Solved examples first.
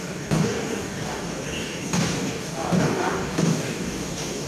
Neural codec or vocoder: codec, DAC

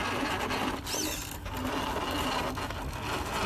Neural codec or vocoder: none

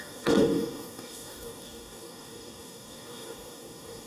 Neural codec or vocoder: codec, DAC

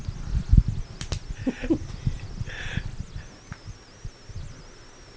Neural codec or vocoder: none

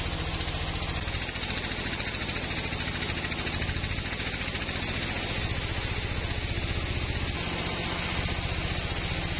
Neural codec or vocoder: none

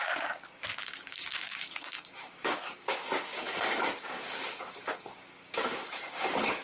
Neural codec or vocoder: codec, DAC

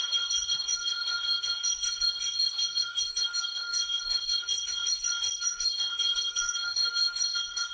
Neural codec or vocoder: codec, DAC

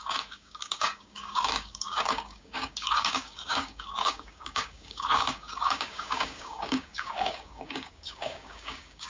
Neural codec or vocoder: codec, DAC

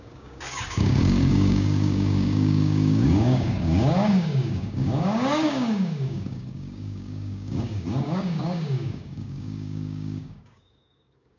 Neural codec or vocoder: codec, DAC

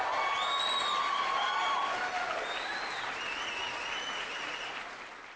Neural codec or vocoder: none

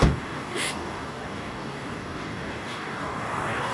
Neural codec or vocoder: codec, DAC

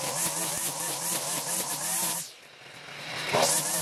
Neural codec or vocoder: none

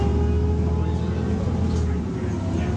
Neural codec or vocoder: none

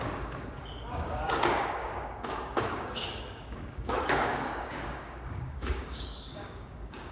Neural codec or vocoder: codec, DAC